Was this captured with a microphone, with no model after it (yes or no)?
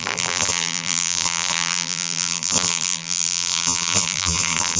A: no